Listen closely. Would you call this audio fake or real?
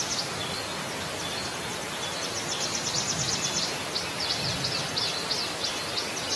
real